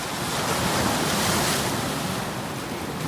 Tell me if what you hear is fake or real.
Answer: real